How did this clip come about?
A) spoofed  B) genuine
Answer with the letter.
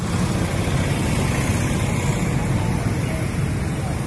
B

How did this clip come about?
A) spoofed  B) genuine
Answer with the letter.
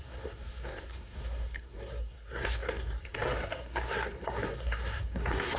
A